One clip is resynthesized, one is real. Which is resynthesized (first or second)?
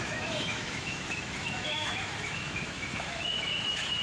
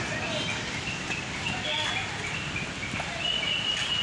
first